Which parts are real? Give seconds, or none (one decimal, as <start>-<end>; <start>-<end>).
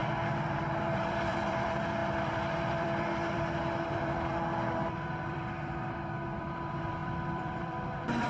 none